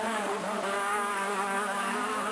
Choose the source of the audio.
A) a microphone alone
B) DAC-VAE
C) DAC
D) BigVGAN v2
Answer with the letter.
C